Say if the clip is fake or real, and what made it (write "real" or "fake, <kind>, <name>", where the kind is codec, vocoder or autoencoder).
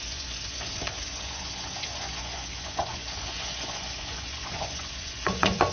fake, vocoder, Vocos